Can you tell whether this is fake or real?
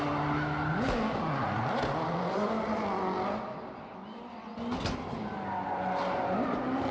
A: real